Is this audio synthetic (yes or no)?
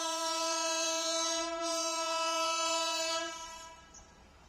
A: yes